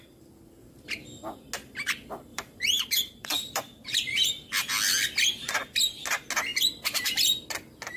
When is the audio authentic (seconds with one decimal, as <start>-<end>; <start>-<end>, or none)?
0.0-2.3; 4.5-8.0